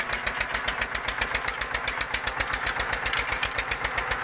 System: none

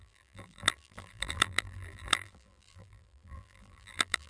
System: vocoder, BigVGAN v2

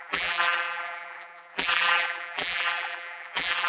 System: vocoder, BigVGAN v2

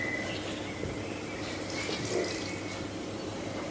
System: none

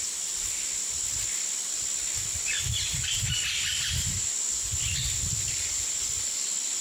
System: none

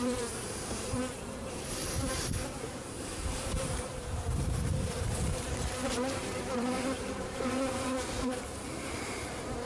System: vocoder, BigVGAN v2